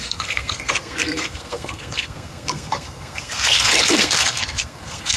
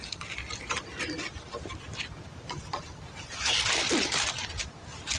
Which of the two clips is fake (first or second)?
first